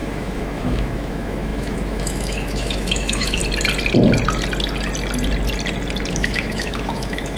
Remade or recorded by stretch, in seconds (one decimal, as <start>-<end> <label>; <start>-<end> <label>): 0.0-3.4 remade; 3.4-6.1 recorded; 6.1-7.4 remade